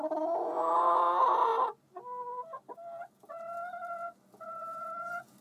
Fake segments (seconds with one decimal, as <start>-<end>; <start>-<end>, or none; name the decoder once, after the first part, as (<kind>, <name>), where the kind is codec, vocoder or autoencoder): none